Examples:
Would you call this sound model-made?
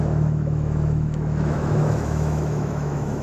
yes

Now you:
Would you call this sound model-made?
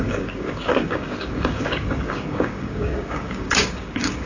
yes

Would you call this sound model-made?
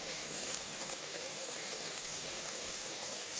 yes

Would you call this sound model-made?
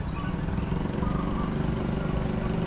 no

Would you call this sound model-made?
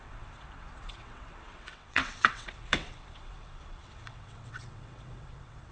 yes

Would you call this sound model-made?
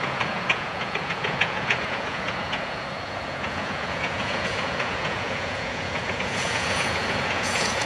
yes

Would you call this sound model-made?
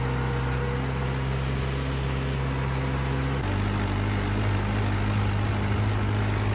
no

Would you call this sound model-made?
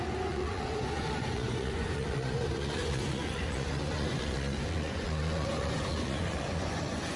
yes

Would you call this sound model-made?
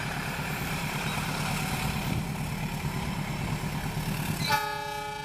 no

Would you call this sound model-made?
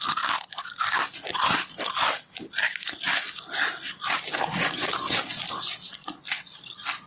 no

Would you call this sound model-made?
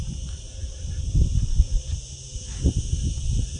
no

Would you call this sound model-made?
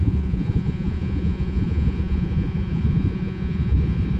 yes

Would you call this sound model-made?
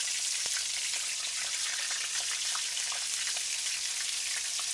no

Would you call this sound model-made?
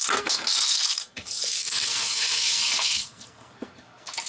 yes